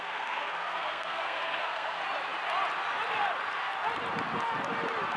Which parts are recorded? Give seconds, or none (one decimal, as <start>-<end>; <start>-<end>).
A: 2.0-5.2